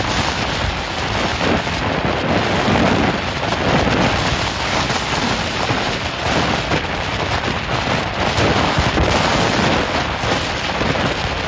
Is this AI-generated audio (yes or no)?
no